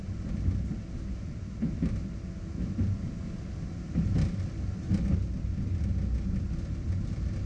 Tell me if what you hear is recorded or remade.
recorded